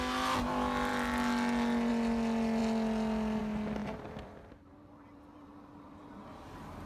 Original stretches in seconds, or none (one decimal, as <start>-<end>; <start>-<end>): 0.0-3.8; 6.0-6.9